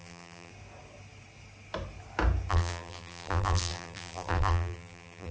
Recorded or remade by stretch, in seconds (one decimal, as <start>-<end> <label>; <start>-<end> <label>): 0.0-0.5 remade; 0.5-2.5 recorded; 2.5-5.3 remade